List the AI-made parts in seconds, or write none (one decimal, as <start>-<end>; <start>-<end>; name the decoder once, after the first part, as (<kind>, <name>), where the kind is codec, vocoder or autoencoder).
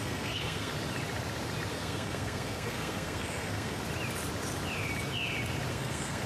0.0-0.7 (codec, SNAC); 1.7-3.8; 5.7-6.3